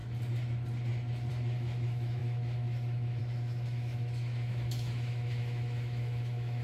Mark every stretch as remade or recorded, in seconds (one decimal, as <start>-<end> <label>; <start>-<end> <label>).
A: 0.0-1.3 recorded; 1.3-6.6 remade